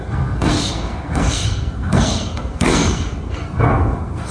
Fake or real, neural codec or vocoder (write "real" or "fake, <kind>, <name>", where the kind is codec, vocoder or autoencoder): fake, codec, SNAC